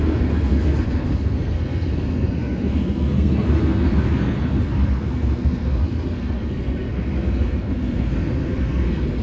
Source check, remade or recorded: remade